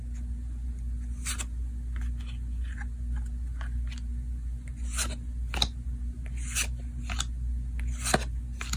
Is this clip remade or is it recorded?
recorded